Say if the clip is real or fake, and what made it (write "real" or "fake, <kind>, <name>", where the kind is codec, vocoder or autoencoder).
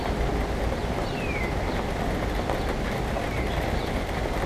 real